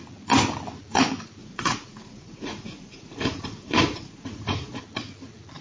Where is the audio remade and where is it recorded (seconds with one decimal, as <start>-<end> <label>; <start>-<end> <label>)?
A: 0.0-1.4 recorded; 1.4-4.8 remade; 4.8-5.6 recorded